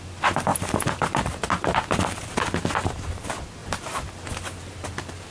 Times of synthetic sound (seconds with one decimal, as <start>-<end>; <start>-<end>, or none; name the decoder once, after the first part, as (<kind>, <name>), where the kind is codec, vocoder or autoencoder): 3.6-4.1 (vocoder, BigVGAN v2)